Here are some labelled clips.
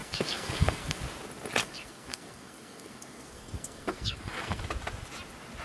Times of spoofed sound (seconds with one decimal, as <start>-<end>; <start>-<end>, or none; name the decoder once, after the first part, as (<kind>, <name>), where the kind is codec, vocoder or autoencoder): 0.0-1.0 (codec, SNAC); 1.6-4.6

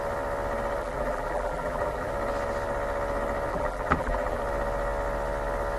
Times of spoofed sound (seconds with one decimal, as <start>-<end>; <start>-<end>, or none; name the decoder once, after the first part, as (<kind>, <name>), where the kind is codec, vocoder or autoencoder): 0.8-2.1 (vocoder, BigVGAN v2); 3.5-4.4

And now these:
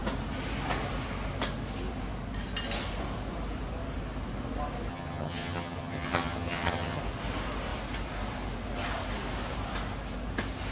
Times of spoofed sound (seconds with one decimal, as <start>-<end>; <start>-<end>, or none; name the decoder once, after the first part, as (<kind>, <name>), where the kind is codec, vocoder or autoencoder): 4.9-7.0 (vocoder, HiFi-GAN)